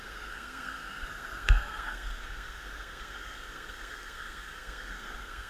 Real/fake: fake